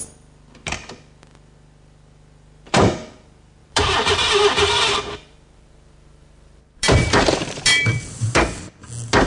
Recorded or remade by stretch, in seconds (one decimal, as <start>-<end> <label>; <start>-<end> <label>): 0.0-3.6 recorded; 3.6-8.6 remade; 8.6-9.3 recorded